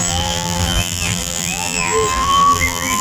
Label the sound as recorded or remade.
remade